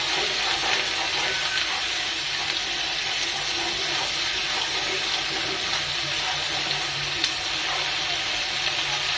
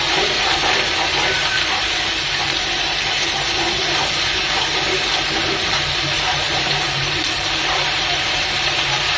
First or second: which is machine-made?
second